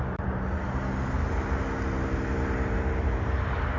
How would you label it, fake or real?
real